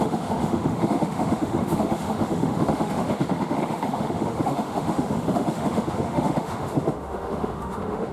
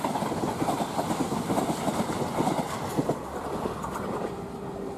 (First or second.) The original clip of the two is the second